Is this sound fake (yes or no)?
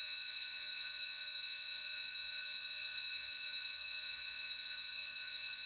yes